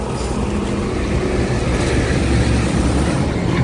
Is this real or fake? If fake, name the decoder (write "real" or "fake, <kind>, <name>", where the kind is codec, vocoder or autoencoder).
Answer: real